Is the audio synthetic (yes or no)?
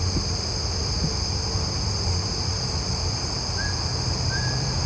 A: no